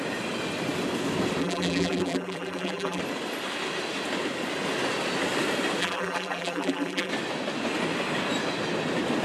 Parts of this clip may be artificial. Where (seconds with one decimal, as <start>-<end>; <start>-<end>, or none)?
1.4-3.0; 5.8-7.1